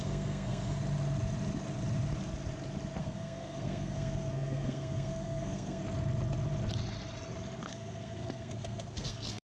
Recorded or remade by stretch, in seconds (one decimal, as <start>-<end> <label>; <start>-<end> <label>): 0.0-0.8 remade; 0.8-3.0 recorded; 3.0-5.8 remade; 5.8-7.6 recorded; 7.6-9.5 remade